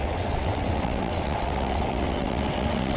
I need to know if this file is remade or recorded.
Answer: remade